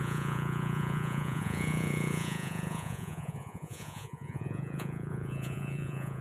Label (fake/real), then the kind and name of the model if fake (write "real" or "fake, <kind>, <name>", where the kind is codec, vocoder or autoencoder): fake, vocoder, Vocos